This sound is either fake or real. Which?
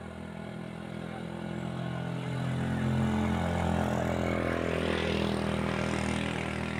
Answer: real